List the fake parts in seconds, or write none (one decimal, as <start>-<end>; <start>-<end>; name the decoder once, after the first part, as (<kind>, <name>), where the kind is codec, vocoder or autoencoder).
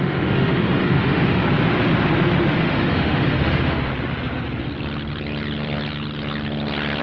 0.0-1.4 (autoencoder, DAC-VAE); 2.6-3.9